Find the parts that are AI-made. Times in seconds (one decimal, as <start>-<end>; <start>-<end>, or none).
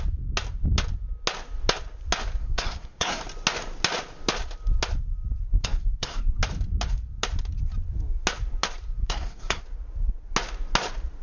2.4-3.2; 5.6-6.4; 9.0-9.6